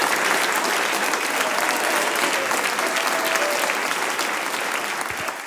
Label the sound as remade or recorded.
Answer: recorded